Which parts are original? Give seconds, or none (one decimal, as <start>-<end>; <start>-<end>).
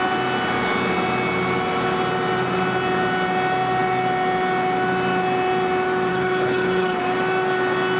0.0-6.1; 7.0-8.0